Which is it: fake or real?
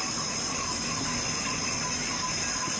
real